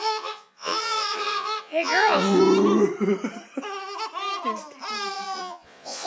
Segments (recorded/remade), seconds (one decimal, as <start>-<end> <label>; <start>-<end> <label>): 0.0-2.4 remade; 2.4-5.1 recorded; 5.1-6.1 remade

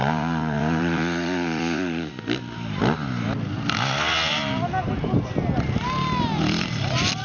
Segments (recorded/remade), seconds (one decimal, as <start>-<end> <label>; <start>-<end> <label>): 0.0-2.1 remade; 2.1-7.2 recorded

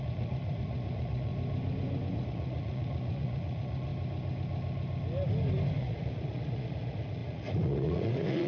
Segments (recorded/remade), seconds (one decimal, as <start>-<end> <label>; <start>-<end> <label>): 0.0-1.3 remade; 1.3-2.1 recorded; 2.1-3.9 remade; 3.9-5.8 recorded; 5.8-8.5 remade